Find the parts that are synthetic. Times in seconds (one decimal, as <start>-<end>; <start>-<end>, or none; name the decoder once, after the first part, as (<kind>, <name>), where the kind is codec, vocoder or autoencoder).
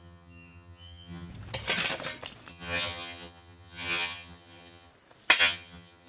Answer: 0.0-1.3 (vocoder, HiFi-GAN); 2.5-4.9; 5.4-6.1